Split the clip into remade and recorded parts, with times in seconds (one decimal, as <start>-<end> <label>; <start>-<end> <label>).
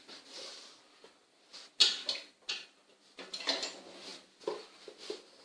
0.0-5.4 recorded